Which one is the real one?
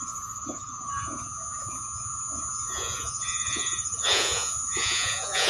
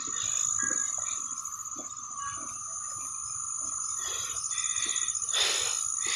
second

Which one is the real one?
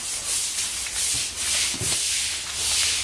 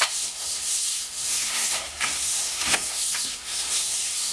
first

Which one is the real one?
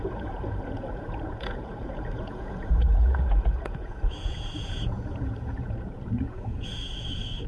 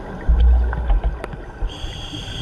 second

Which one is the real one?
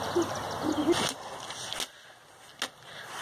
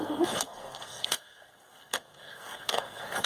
first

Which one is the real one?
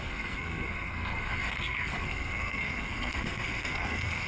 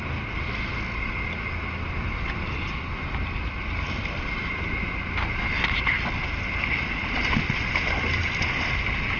second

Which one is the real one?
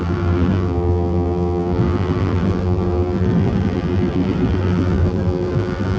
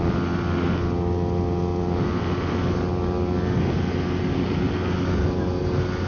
second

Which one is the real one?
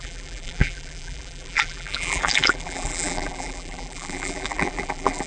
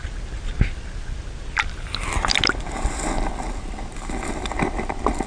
second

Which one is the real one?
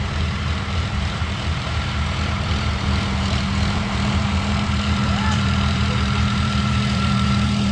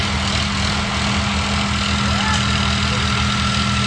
second